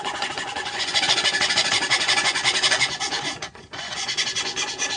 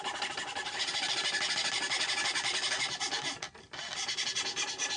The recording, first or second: second